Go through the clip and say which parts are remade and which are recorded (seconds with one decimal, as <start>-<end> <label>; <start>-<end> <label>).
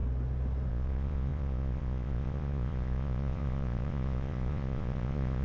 0.0-0.7 recorded; 0.7-5.4 remade